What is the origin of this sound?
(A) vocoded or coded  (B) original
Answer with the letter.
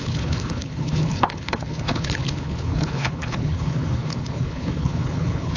A